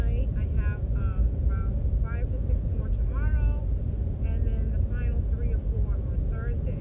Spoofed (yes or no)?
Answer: no